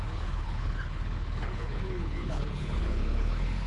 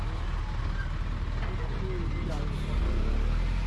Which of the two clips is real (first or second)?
second